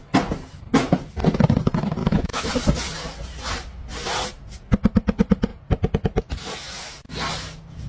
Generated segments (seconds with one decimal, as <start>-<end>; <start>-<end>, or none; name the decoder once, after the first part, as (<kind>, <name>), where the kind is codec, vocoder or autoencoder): 2.0-2.5 (autoencoder, DAC-VAE)